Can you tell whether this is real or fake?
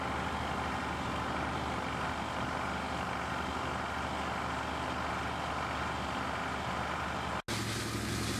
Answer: real